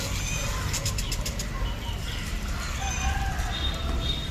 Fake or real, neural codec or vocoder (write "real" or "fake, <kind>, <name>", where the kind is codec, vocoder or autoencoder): real